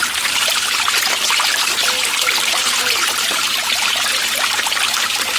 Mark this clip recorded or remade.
recorded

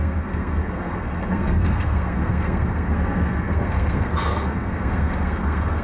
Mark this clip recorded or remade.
remade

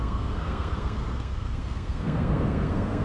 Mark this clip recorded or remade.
remade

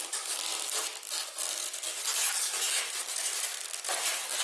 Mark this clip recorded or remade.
recorded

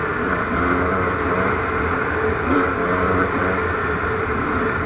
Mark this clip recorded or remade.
recorded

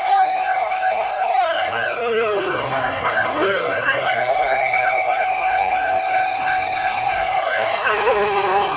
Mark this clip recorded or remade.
remade